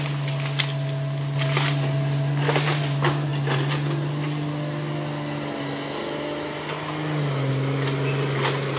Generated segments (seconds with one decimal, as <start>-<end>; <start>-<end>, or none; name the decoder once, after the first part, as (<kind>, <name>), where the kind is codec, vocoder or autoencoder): none

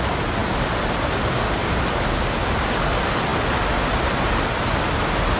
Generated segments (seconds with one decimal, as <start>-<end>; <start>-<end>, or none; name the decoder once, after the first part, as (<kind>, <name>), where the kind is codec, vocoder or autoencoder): none

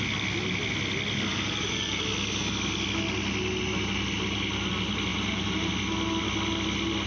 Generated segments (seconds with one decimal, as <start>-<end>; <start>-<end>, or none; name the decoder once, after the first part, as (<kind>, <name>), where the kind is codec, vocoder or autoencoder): 1.3-2.0 (vocoder, BigVGAN v2); 5.1-5.7

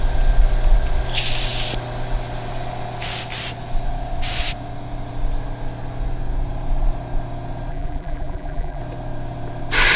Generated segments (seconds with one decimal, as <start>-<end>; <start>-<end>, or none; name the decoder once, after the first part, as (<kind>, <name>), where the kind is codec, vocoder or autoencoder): 7.7-8.8 (vocoder, BigVGAN v2)

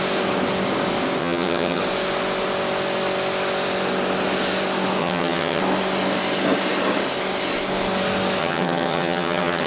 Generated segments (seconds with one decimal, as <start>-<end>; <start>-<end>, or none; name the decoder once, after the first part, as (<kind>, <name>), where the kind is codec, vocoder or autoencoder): 1.2-1.8 (vocoder, HiFi-GAN); 5.0-5.6; 8.4-9.7